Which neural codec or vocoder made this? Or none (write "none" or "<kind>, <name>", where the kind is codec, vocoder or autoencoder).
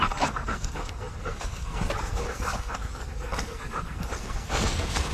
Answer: codec, SNAC